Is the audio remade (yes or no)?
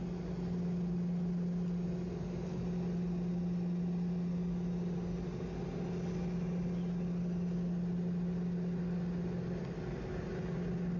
no